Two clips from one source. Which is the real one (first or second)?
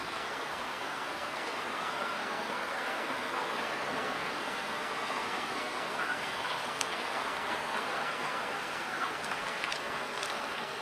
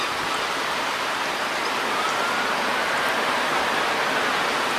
second